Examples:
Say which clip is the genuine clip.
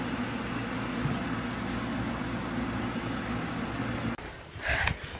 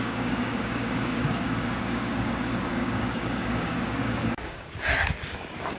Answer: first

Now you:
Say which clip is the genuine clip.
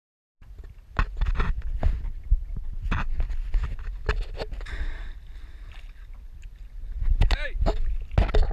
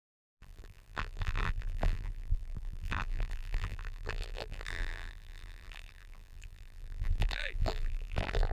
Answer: first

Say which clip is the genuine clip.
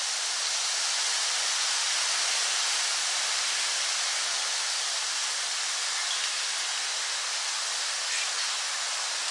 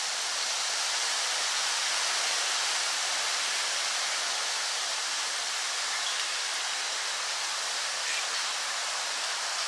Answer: first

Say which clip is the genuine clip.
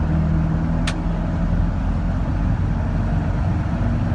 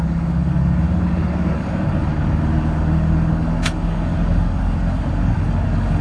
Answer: first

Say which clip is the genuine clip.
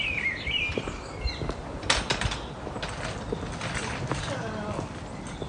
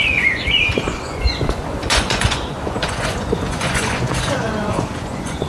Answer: first